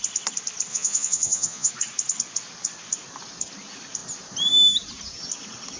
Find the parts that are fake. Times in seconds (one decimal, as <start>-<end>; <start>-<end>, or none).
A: 0.7-1.7